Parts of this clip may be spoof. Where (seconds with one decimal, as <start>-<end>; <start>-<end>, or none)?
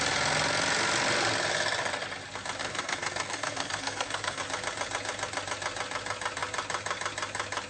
2.6-4.4